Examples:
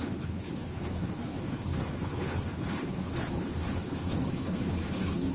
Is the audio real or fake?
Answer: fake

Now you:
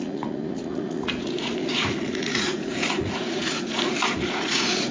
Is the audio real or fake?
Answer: fake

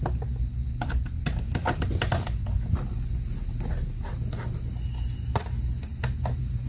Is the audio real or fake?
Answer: real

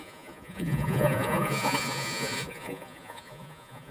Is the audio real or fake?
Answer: fake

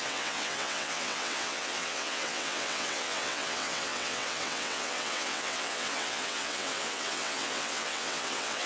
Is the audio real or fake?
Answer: fake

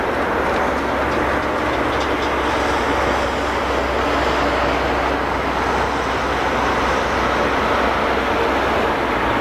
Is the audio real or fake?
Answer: real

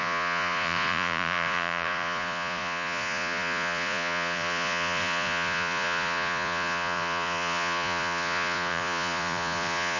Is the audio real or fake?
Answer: fake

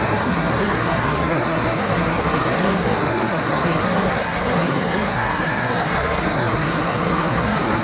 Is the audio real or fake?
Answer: fake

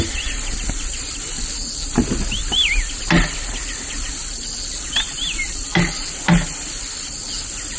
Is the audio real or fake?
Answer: real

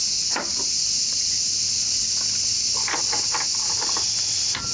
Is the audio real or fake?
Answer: real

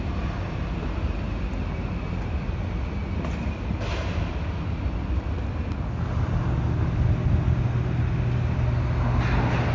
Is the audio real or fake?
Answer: real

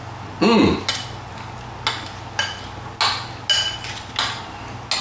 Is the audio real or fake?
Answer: real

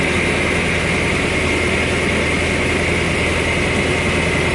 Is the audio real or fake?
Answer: real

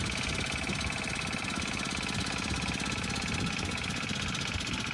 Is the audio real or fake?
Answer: real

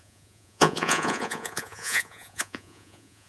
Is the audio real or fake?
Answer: fake